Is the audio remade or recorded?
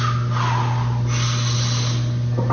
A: recorded